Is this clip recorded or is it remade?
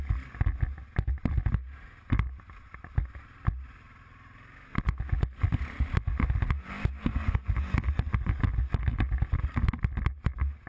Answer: recorded